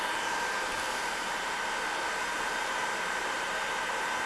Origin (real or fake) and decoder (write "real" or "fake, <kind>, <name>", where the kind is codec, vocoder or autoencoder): fake, vocoder, BigVGAN v2